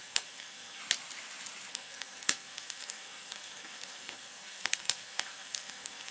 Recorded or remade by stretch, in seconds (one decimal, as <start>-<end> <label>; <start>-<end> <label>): 0.0-0.8 remade; 0.8-1.7 recorded; 1.7-6.1 remade